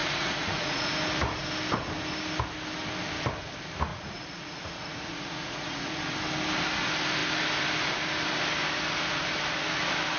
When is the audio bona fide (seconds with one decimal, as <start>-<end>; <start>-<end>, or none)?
0.9-3.9; 6.0-10.2